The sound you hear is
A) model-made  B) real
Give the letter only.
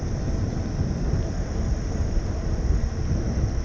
B